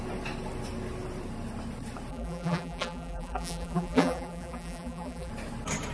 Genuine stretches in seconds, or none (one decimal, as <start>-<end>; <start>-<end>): 0.0-2.1; 5.3-5.9